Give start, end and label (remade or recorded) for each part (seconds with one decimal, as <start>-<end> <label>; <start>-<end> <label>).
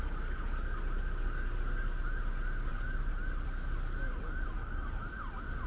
0.0-5.7 recorded